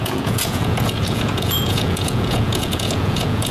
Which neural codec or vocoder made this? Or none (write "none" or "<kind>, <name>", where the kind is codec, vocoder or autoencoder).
vocoder, Vocos